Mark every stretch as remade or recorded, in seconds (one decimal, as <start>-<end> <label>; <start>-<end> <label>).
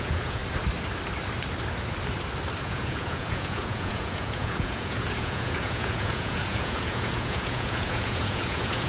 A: 0.0-0.4 remade; 0.4-2.6 recorded; 2.6-8.9 remade